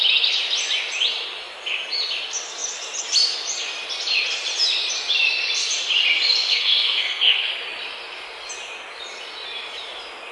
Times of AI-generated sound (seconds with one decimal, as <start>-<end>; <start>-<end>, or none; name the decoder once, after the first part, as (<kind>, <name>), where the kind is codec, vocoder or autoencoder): 6.5-7.5 (codec, SNAC)